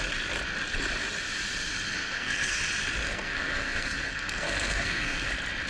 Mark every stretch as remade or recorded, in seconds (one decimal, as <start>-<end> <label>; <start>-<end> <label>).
0.0-2.0 recorded; 2.0-2.6 remade; 2.6-3.0 recorded; 3.0-5.3 remade; 5.3-5.7 recorded